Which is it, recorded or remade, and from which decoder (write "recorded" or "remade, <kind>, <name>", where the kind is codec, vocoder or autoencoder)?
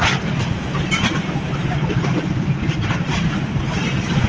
recorded